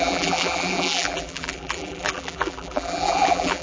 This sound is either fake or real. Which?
fake